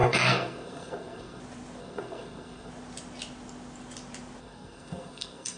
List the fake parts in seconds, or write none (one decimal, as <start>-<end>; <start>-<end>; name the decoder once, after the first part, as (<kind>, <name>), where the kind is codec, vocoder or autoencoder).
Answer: 0.0-1.4 (codec, SNAC); 1.8-2.7; 4.4-5.6